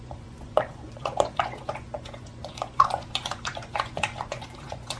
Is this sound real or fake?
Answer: fake